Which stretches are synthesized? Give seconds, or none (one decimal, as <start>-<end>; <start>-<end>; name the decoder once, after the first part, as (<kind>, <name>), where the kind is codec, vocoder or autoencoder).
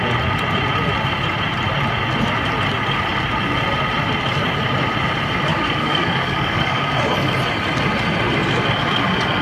5.5-6.9 (codec, DAC)